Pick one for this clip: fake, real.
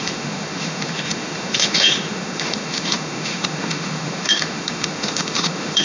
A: fake